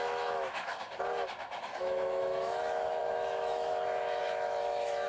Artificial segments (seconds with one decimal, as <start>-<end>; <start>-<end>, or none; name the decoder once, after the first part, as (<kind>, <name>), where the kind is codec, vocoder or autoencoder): 0.0-0.7 (autoencoder, DAC-VAE); 1.6-5.1